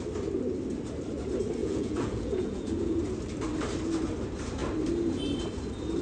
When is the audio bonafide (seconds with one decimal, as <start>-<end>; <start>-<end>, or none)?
0.0-1.6; 3.0-6.0